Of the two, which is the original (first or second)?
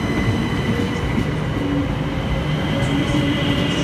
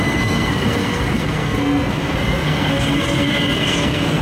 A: first